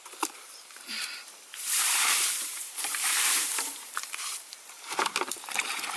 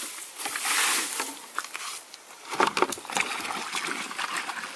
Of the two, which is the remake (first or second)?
first